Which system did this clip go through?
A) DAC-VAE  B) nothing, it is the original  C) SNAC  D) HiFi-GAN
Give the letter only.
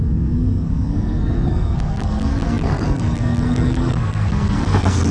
C